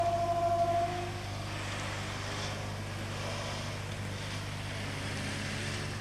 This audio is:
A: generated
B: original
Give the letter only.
B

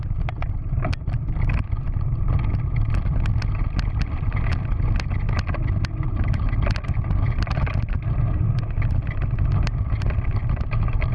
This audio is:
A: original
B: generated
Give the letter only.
A